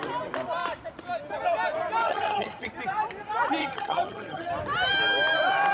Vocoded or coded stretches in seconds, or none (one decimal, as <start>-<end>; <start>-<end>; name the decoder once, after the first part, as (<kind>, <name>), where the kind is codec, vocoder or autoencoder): 2.0-2.7 (vocoder, HiFi-GAN); 3.6-4.5